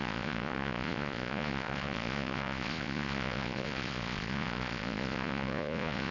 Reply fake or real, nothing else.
fake